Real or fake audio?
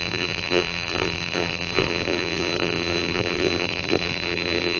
fake